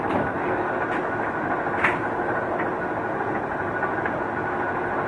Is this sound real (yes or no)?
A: yes